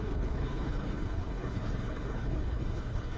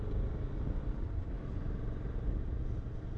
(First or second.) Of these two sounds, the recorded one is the second